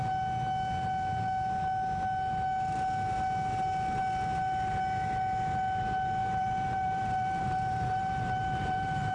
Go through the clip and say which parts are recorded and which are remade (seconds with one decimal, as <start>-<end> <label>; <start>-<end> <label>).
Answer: 0.0-6.2 recorded; 6.2-9.1 remade